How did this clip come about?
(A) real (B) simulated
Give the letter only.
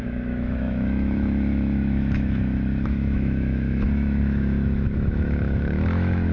B